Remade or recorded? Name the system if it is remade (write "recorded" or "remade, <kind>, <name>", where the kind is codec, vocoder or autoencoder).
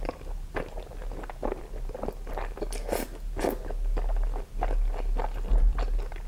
recorded